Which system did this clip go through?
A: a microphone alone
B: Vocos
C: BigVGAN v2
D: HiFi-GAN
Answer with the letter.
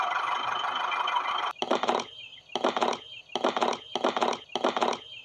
A